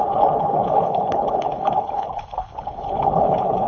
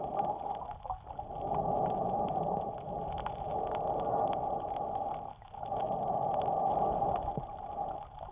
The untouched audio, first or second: second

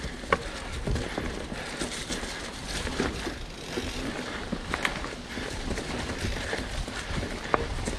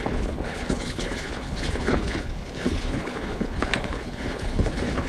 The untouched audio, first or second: first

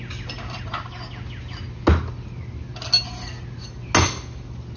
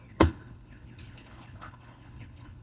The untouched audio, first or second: first